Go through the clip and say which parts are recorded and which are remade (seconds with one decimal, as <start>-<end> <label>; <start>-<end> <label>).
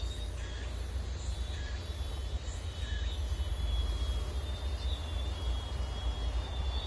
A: 0.0-6.9 recorded